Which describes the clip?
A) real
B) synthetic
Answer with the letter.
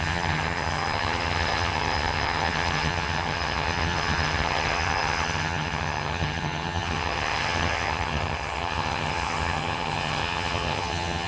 B